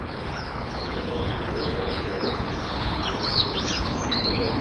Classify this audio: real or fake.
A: fake